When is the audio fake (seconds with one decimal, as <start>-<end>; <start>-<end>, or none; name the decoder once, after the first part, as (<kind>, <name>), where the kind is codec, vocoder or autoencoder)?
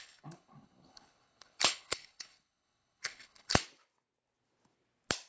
0.0-3.6 (codec, HILCodec)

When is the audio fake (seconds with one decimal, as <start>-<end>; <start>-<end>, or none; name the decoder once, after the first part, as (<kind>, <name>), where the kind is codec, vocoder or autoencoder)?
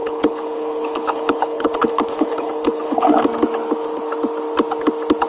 0.0-3.2 (codec, HILCodec)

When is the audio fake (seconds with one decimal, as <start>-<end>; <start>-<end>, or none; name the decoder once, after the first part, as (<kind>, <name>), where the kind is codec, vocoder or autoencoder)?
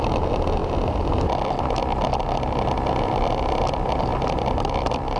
none